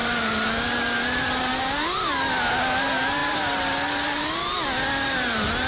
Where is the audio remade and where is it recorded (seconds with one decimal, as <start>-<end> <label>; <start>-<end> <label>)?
0.0-5.7 recorded